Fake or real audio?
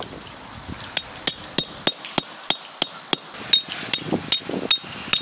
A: real